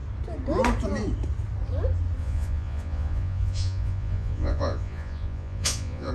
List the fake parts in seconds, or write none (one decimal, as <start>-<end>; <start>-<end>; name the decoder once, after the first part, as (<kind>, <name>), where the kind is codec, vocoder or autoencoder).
2.2-6.1 (vocoder, Vocos)